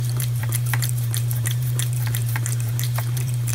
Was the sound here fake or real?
fake